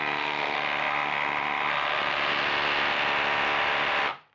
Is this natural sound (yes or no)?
yes